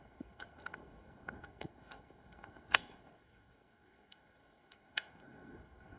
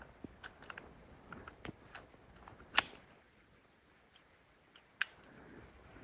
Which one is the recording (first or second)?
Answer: second